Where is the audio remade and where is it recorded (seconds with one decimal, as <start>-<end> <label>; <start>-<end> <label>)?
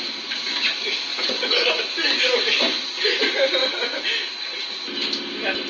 0.0-1.1 recorded; 1.1-1.8 remade; 1.8-5.7 recorded